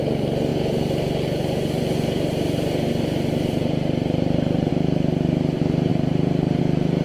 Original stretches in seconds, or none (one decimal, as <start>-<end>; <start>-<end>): 0.0-0.5; 4.7-5.9; 6.6-7.0